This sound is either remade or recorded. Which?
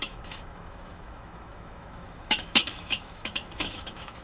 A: remade